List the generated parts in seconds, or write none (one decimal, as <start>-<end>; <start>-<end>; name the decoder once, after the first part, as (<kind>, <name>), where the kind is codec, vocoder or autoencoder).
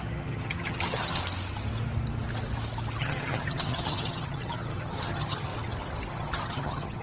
0.0-1.2 (vocoder, HiFi-GAN); 3.0-5.5; 6.1-7.0